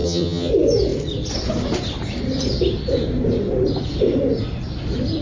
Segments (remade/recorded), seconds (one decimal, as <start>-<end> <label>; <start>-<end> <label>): 0.0-0.5 remade; 0.5-5.2 recorded